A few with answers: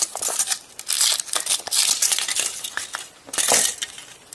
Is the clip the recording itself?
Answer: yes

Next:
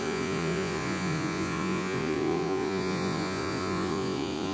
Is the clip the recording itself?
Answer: no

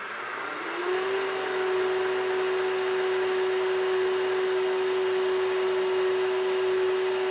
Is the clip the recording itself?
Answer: yes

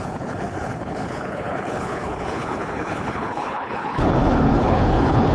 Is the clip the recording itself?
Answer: no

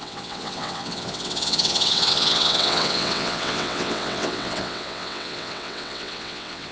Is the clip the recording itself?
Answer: no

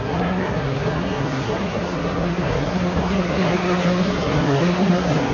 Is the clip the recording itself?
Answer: no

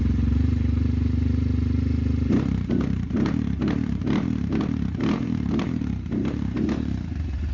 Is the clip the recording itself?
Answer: no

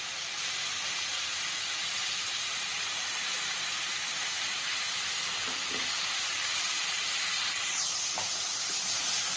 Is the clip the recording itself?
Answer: no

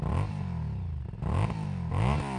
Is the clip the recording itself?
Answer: yes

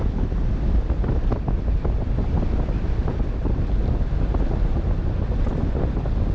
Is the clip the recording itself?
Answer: yes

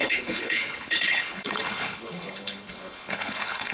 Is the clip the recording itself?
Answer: no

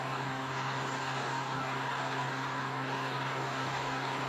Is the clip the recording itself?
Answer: no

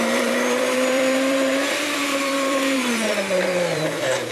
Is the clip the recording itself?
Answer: no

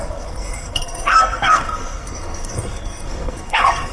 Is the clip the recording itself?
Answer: no